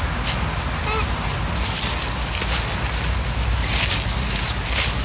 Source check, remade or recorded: recorded